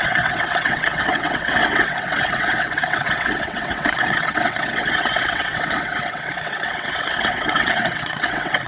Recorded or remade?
remade